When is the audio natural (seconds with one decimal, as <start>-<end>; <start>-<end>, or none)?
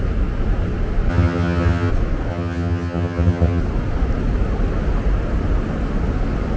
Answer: 0.0-1.1; 1.9-2.3; 3.6-6.6